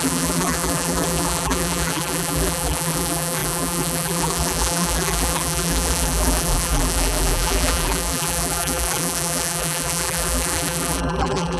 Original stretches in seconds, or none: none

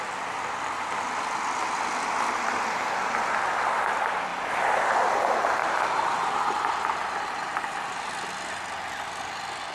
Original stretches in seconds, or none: 0.0-4.3; 5.1-5.6; 8.0-9.7

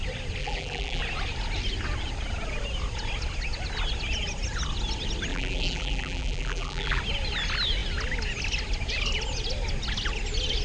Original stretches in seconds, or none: 0.0-0.4; 1.0-5.3; 7.0-10.6